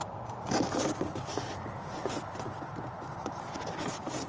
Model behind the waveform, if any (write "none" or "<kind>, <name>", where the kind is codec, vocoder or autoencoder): none